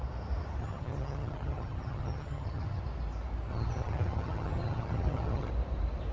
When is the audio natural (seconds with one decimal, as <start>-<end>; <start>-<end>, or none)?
0.0-0.6; 2.8-3.5; 5.5-6.1